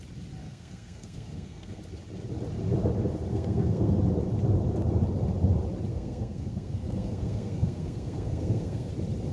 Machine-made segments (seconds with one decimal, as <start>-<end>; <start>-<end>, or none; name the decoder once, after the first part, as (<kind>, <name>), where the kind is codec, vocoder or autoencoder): 0.4-1.8 (codec, SNAC); 3.3-4.0; 5.9-8.9